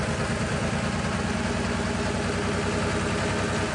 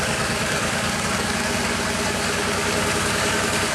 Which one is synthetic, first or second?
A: second